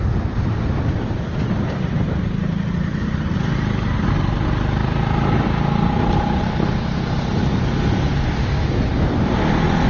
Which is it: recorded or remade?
recorded